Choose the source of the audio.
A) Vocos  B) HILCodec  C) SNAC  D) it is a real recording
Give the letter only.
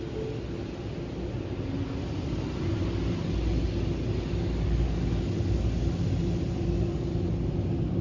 D